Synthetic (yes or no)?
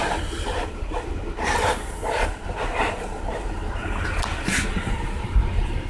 no